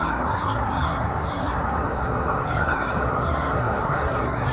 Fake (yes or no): yes